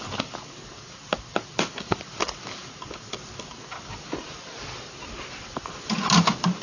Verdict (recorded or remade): recorded